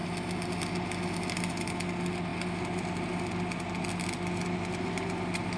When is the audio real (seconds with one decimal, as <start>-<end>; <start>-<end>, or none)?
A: 0.0-5.6